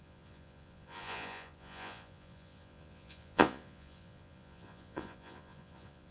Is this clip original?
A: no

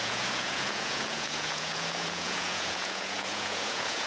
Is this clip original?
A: no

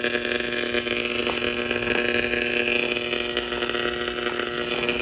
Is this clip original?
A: yes